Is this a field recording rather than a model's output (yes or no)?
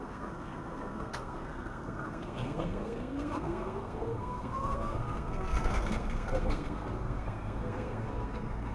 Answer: no